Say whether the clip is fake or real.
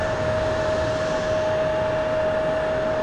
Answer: real